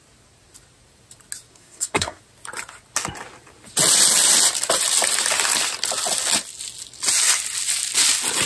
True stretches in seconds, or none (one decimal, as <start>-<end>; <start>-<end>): 0.0-1.5; 2.2-8.5